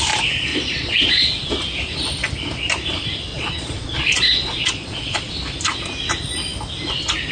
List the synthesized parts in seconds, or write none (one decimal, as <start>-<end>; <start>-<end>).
0.5-1.5; 3.3-5.3